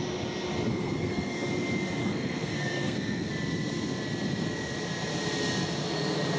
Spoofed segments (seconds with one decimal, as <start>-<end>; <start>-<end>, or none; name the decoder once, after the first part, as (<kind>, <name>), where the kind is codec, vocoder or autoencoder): 0.7-1.5 (codec, SNAC); 2.0-3.3